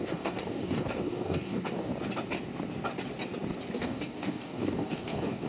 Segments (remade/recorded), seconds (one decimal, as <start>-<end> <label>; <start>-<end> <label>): 0.0-1.9 remade; 1.9-3.8 recorded; 3.8-5.5 remade